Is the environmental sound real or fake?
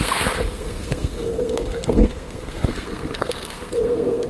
fake